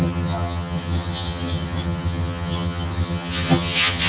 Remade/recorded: remade